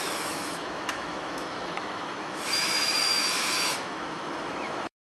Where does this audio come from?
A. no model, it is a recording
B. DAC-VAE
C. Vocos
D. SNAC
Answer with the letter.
B